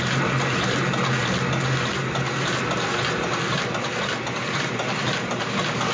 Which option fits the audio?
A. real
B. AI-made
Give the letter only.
A